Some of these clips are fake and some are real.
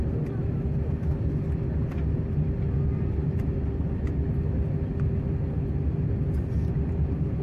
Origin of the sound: real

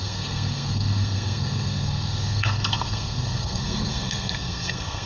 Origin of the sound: fake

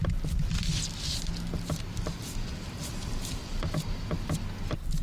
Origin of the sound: real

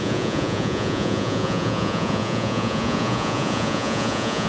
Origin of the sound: fake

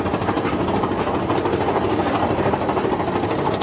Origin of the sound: real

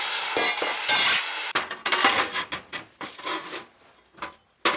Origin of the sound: real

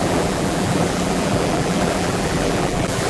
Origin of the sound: fake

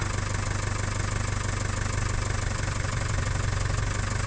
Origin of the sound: real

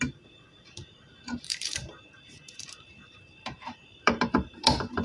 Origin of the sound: fake